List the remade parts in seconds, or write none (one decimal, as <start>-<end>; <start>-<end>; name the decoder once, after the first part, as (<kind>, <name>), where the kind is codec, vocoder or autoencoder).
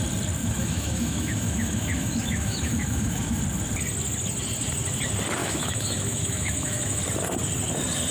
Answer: 0.4-3.4 (autoencoder, DAC-VAE); 5.4-7.0